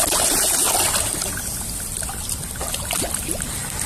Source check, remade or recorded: recorded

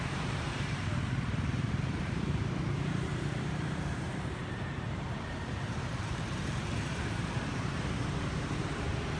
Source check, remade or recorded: remade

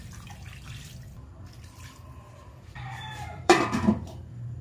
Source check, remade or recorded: remade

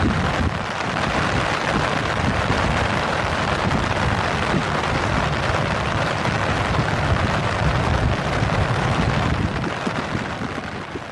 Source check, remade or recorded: remade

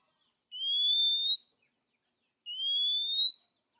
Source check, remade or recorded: recorded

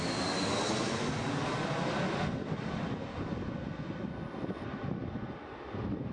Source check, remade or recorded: recorded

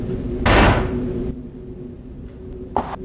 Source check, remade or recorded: recorded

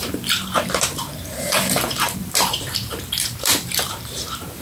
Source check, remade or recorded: remade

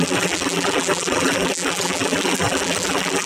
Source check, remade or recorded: remade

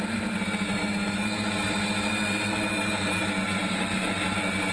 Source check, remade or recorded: remade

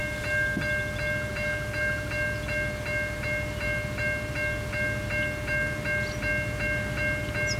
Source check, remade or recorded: recorded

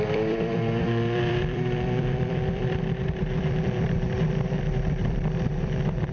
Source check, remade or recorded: remade